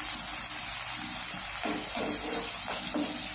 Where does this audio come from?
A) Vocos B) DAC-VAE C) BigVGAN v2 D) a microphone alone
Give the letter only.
D